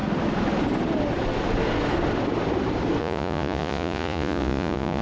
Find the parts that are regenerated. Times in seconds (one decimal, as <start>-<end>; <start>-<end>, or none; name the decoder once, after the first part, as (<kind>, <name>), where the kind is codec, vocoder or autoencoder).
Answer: 3.0-5.0 (vocoder, Vocos)